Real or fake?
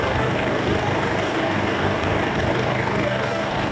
fake